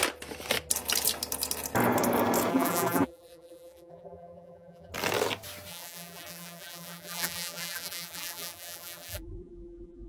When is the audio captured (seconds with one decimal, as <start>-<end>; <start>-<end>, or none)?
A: 0.0-2.5; 4.9-5.7